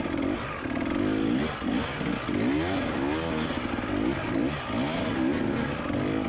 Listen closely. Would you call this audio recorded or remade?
recorded